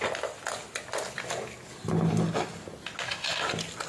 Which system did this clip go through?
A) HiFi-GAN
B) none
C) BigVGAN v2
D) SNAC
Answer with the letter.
B